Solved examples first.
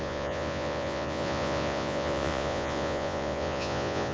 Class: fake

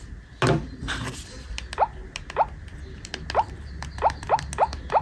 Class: real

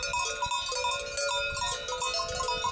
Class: real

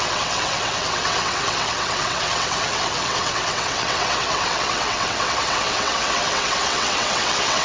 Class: fake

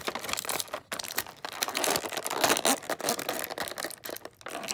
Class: real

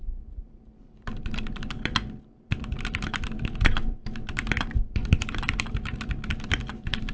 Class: fake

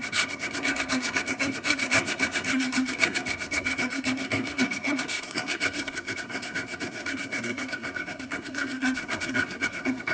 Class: fake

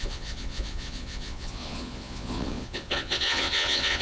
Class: fake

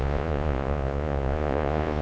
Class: fake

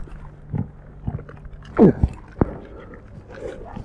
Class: real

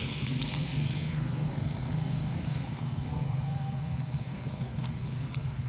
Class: fake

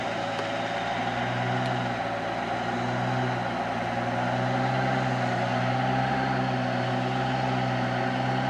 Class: real